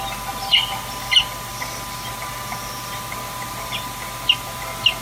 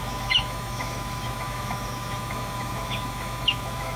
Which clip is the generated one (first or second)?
second